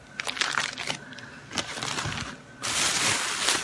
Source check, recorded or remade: recorded